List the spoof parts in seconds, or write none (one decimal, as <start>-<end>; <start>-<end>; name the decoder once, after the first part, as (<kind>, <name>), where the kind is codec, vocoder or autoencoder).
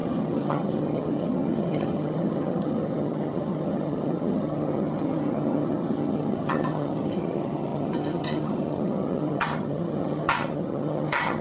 0.0-11.4 (vocoder, HiFi-GAN)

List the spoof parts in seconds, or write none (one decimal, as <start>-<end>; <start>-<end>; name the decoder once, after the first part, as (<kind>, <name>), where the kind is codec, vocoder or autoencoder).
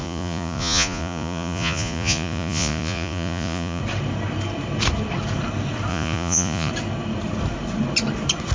0.0-3.8 (vocoder, Vocos); 5.9-6.7